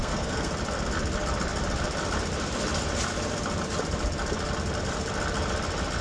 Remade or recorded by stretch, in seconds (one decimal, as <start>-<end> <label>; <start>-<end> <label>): 0.0-0.5 remade; 0.5-6.0 recorded